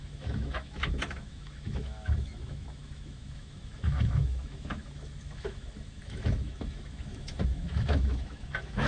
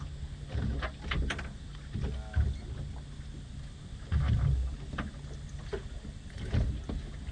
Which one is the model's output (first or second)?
first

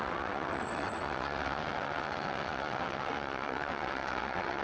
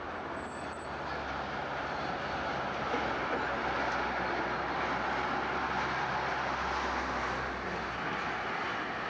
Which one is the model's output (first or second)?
first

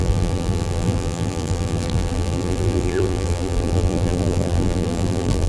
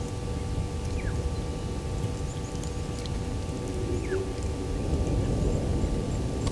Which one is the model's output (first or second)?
first